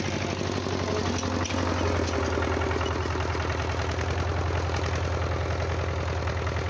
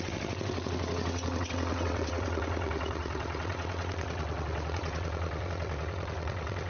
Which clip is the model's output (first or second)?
second